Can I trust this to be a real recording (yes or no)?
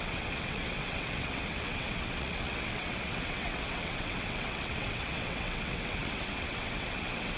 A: no